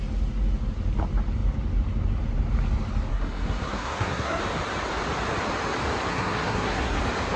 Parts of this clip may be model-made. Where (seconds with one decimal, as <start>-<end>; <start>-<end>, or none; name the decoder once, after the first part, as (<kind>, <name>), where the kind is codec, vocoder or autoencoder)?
3.1-4.4 (codec, SNAC); 6.1-7.0